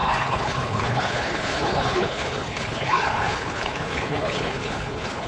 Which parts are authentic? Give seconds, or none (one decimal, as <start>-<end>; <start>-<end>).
none